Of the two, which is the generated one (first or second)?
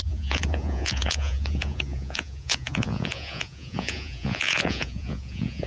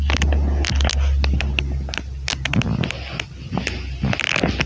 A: first